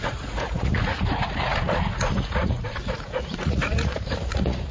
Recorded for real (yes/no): no